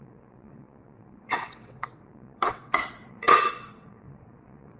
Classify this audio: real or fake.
fake